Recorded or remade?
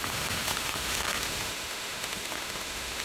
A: remade